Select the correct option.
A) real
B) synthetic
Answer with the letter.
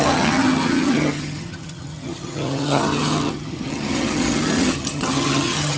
B